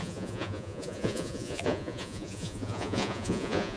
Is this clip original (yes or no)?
no